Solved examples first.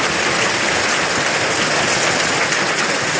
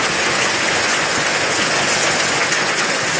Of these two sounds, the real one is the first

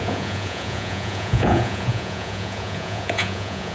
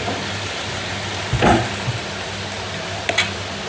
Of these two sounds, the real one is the second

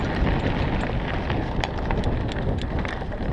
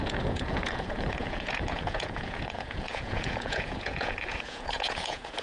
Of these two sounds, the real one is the first